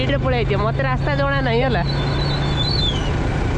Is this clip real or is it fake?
real